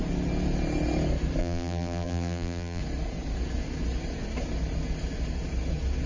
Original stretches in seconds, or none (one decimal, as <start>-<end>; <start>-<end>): 0.0-1.4; 2.8-6.1